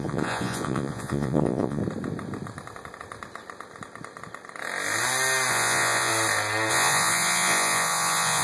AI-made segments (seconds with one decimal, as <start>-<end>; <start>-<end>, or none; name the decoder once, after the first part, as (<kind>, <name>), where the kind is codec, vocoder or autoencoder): 0.0-1.8 (vocoder, Vocos); 5.5-6.1; 6.7-8.4